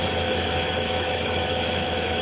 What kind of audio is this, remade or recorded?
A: remade